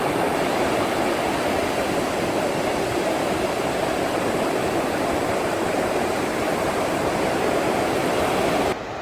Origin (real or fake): real